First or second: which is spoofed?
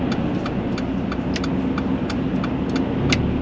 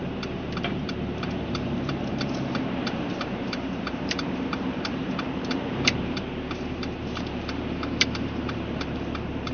second